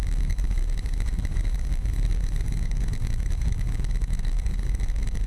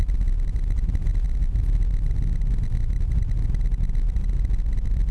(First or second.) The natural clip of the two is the second